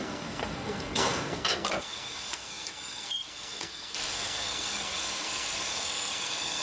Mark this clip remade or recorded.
remade